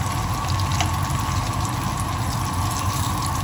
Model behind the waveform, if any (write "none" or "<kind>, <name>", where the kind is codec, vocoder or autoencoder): none